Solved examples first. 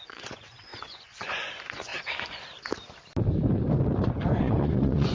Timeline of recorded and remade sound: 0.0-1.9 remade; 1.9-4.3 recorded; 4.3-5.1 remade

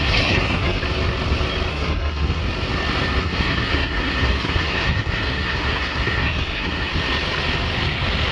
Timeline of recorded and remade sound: 0.0-0.8 remade; 0.8-1.7 recorded; 1.7-2.4 remade; 2.4-3.2 recorded; 3.2-6.9 remade; 6.9-8.3 recorded

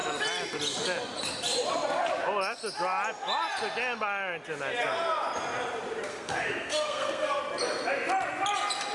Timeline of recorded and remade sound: 0.0-6.1 recorded; 6.1-7.4 remade; 7.4-8.9 recorded

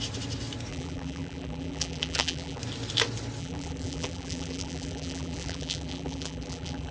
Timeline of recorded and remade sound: 0.0-0.7 recorded; 0.7-2.6 remade; 2.6-3.4 recorded; 3.4-6.9 remade